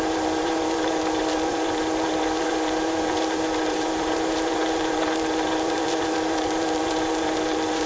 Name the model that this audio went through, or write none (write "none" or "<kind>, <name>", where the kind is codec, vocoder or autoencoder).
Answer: vocoder, BigVGAN v2